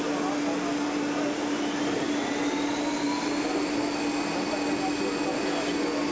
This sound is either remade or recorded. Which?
recorded